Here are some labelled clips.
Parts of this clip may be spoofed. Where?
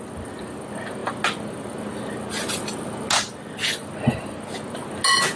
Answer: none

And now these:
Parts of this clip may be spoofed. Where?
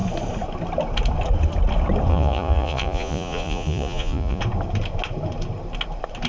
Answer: 2.1-4.4 (vocoder, Vocos)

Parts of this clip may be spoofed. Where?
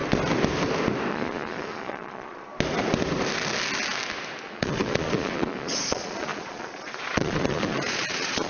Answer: 1.1-2.5 (vocoder, Vocos); 4.4-8.5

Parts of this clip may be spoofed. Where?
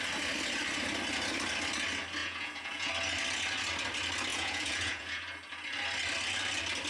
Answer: 2.2-2.9 (vocoder, Vocos); 4.3-5.2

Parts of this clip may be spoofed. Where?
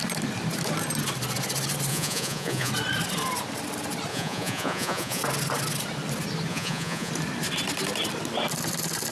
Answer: 1.9-2.7 (vocoder, Vocos); 4.1-5.2; 6.5-7.1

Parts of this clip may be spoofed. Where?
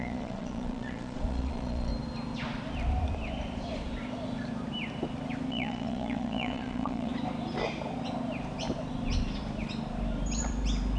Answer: 0.0-1.9 (vocoder, Vocos); 5.5-7.1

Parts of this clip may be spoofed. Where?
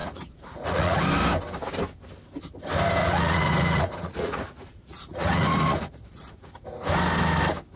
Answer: 0.0-1.0 (vocoder, Vocos); 3.0-6.5